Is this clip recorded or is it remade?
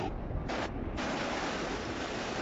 recorded